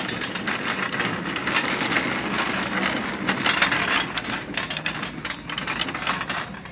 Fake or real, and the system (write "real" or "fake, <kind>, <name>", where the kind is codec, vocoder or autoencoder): real